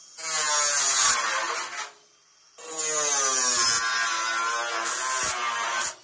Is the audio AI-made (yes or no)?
no